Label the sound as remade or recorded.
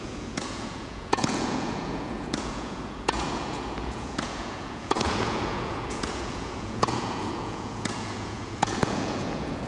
remade